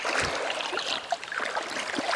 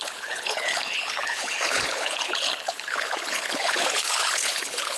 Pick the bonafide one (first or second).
first